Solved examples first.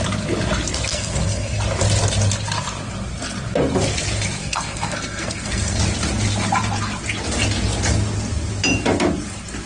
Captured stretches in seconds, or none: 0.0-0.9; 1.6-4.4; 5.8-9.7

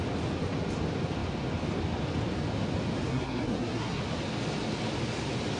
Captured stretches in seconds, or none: 0.0-3.1; 4.0-5.6

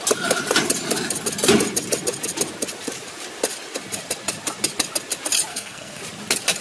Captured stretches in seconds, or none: 0.0-5.5; 6.0-6.6

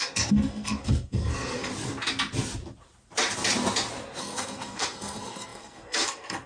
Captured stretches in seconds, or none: 1.7-4.2

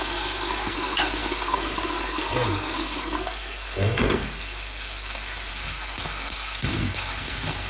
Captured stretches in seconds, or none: none

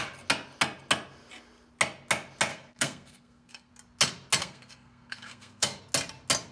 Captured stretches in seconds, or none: 0.0-2.5; 3.7-4.4; 5.8-6.5